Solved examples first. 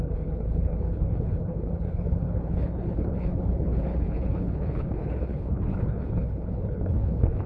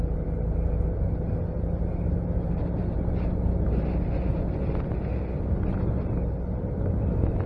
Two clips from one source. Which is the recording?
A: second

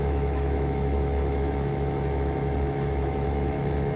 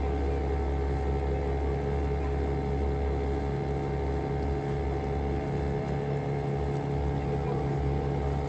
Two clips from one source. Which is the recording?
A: second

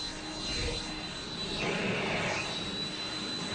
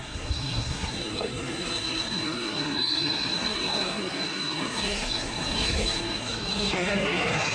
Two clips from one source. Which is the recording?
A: first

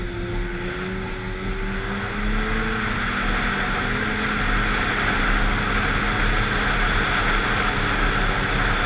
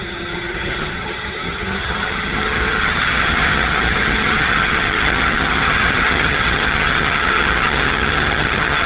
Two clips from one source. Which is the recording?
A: first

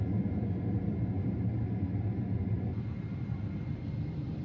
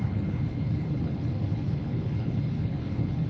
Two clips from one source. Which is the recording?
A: first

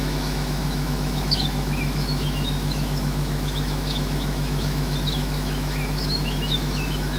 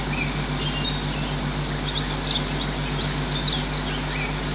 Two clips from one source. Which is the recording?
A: second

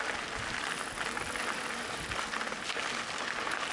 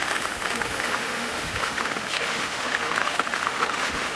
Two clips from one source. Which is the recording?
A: first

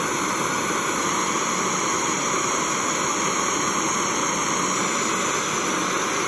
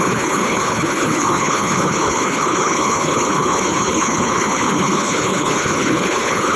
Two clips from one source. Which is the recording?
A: first